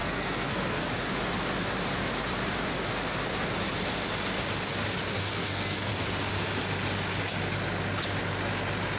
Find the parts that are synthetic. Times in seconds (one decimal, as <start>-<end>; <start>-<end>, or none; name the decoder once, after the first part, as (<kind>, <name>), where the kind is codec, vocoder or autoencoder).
0.0-0.9 (codec, SNAC); 5.2-5.9